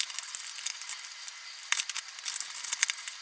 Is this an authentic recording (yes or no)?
yes